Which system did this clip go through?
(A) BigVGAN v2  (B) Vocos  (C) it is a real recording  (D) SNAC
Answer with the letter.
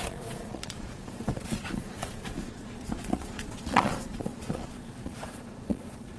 B